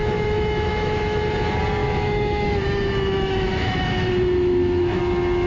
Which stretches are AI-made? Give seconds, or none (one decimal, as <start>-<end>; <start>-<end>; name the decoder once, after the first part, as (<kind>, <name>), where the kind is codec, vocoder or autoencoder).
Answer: 0.0-1.3 (autoencoder, DAC-VAE); 1.8-5.0